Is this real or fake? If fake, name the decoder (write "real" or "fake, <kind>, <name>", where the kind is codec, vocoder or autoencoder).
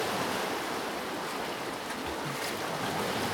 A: real